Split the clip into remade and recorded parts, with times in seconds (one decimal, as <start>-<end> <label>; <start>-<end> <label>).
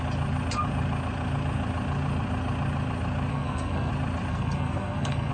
0.0-3.3 recorded; 3.3-3.9 remade; 3.9-4.3 recorded; 4.3-5.3 remade